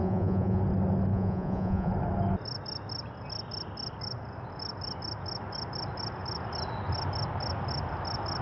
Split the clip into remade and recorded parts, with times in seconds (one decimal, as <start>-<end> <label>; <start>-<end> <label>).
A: 0.0-0.6 remade; 0.6-1.1 recorded; 1.1-1.9 remade; 1.9-8.4 recorded